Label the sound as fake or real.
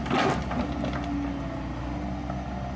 real